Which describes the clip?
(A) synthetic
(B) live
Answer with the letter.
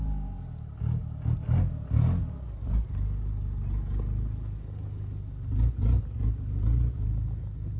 B